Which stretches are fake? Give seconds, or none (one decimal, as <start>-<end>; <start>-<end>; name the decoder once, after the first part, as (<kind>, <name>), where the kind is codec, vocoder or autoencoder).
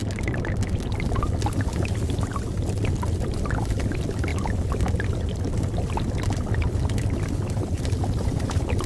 none